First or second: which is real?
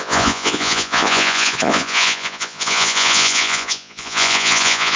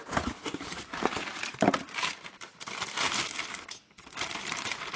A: second